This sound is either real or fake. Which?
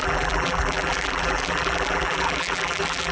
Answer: fake